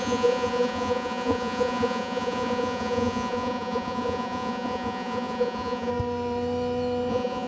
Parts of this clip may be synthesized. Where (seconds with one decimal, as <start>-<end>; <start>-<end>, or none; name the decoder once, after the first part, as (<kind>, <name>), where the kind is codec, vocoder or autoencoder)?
0.0-5.9 (vocoder, Vocos); 7.1-7.5